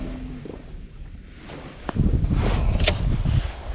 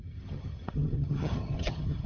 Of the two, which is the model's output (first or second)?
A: second